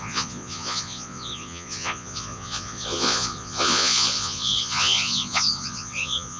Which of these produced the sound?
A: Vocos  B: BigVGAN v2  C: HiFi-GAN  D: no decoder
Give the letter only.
A